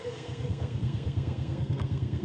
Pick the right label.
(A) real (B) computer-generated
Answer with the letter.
B